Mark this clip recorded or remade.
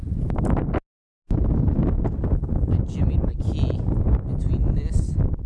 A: recorded